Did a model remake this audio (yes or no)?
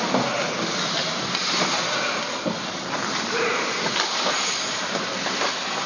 yes